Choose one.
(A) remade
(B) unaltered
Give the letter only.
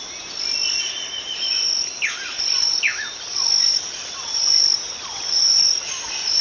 B